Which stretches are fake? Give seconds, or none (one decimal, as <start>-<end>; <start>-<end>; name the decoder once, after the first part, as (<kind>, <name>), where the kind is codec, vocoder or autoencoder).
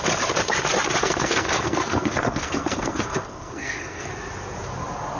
1.0-4.1 (codec, SNAC)